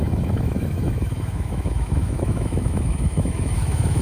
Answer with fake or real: fake